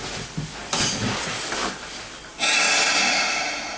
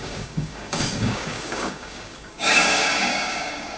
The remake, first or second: second